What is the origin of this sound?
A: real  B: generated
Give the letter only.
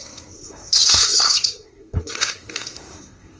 B